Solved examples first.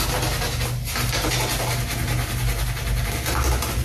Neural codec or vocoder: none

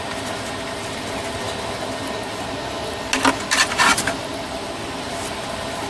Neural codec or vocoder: none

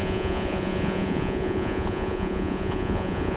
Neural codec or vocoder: vocoder, Vocos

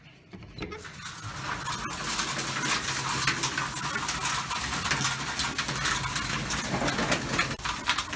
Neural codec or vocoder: none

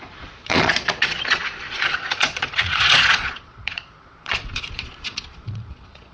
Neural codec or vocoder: vocoder, Vocos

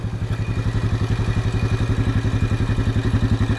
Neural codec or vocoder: none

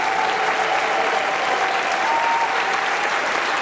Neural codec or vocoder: none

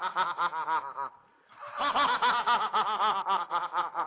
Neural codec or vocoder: none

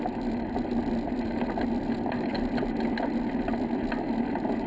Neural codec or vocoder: none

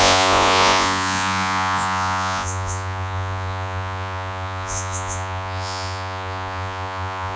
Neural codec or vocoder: vocoder, Vocos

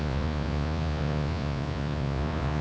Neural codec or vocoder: vocoder, Vocos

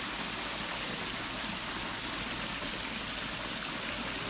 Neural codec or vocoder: none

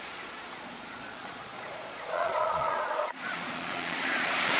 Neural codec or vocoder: vocoder, Vocos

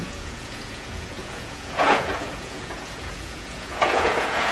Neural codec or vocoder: vocoder, Vocos